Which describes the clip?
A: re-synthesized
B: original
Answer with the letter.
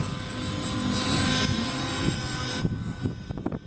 B